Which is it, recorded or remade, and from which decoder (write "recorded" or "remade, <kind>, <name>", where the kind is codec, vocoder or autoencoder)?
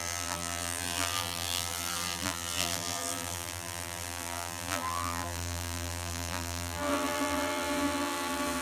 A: remade, vocoder, BigVGAN v2